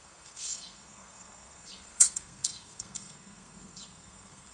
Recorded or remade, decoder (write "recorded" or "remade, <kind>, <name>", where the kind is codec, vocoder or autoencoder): remade, codec, SNAC